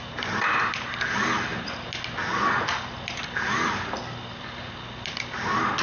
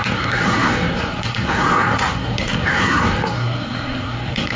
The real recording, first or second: first